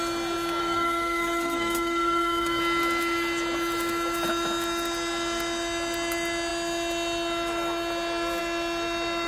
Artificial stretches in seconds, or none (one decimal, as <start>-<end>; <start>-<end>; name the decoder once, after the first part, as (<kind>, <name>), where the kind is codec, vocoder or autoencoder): 0.6-2.6 (codec, SNAC)